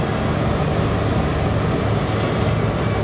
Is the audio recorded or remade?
recorded